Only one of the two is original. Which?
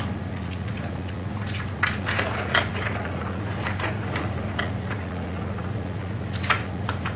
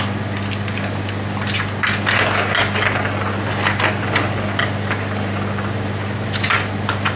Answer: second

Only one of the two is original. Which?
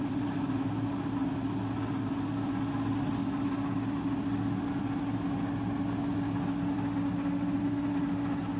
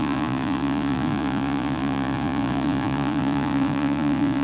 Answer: first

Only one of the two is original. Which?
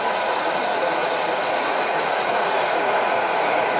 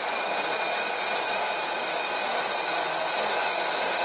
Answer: second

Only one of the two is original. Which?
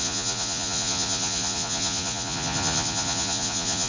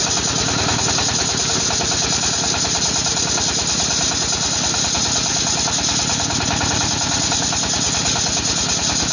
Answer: second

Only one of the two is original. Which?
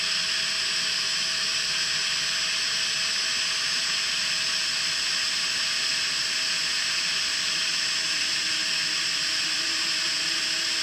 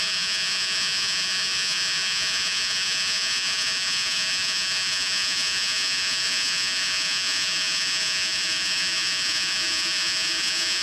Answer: first